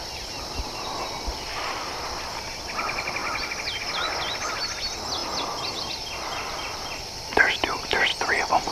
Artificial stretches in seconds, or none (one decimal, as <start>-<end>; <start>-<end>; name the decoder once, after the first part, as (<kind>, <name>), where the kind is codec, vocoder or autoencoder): 0.0-0.6 (vocoder, BigVGAN v2); 3.2-3.8; 5.2-5.9; 8.1-8.7